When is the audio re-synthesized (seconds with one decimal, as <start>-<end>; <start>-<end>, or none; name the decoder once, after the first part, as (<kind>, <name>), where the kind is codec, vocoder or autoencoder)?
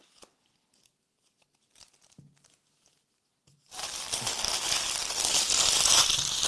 none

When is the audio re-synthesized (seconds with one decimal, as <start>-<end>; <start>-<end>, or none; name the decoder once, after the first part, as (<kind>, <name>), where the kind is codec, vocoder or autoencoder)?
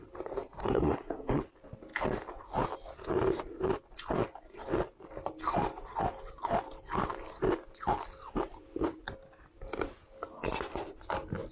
0.6-1.4 (codec, SNAC)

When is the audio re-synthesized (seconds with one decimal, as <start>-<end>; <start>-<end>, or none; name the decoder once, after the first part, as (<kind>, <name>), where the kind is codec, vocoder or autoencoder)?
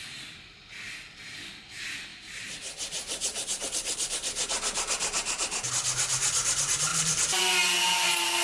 2.1-5.7 (vocoder, BigVGAN v2); 6.9-7.4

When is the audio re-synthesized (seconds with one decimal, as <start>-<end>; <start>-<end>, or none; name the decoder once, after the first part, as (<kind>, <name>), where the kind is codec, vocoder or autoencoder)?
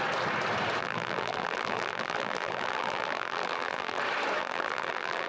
0.8-4.0 (vocoder, BigVGAN v2); 4.4-5.3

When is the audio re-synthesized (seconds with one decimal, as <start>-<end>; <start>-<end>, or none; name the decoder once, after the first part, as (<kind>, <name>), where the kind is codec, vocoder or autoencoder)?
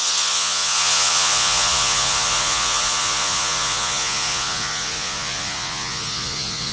0.0-6.7 (vocoder, Vocos)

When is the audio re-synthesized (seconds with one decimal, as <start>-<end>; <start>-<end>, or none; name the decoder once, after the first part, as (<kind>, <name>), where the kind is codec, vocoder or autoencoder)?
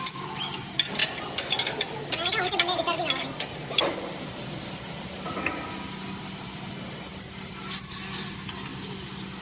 none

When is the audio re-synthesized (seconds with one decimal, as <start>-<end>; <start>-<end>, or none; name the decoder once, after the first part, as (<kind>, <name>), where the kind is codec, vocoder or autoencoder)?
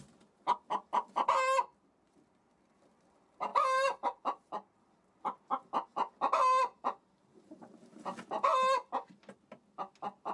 3.5-4.5 (vocoder, BigVGAN v2); 6.7-7.6